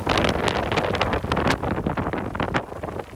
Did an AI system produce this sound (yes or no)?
no